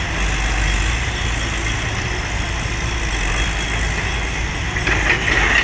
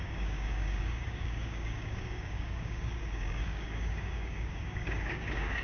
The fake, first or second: second